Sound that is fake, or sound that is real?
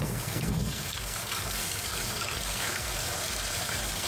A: fake